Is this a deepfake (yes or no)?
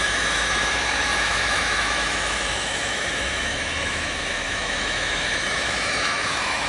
yes